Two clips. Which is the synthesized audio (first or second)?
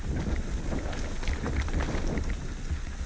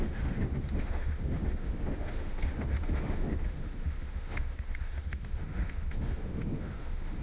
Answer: second